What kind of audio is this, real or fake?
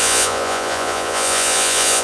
fake